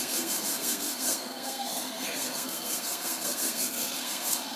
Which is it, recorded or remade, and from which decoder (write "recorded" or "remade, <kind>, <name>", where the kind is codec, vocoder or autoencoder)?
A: remade, codec, SNAC